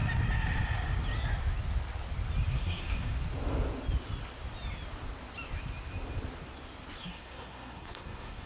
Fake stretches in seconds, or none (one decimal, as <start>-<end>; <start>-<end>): 2.5-3.1; 7.0-8.5